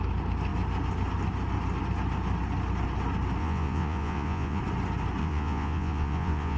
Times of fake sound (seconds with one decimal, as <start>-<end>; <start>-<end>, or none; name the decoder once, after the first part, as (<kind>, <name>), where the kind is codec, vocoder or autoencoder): 3.4-4.6 (vocoder, Vocos); 5.2-6.6